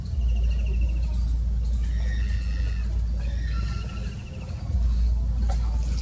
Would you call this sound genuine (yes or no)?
yes